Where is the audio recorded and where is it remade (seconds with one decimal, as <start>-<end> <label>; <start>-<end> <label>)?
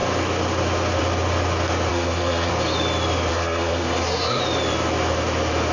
0.0-1.9 recorded; 1.9-2.5 remade; 2.5-3.3 recorded; 3.3-4.4 remade; 4.4-5.7 recorded